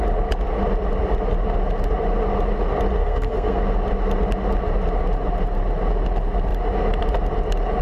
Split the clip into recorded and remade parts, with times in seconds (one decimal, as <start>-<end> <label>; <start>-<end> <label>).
0.0-3.0 recorded; 3.0-3.6 remade; 3.6-7.8 recorded